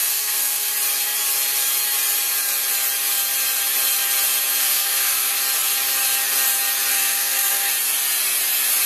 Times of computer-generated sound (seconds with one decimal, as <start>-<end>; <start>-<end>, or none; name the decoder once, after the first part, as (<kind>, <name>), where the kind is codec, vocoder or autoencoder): 0.0-0.7 (codec, SNAC); 4.6-5.4; 6.9-7.7